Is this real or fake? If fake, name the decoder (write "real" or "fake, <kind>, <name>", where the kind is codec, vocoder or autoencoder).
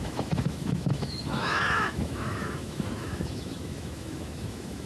fake, autoencoder, DAC-VAE